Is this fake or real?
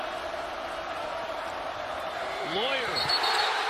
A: fake